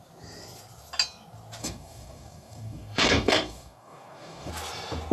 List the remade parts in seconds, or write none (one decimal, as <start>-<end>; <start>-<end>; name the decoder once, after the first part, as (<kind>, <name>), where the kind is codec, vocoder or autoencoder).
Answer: 1.6-4.5 (codec, DAC)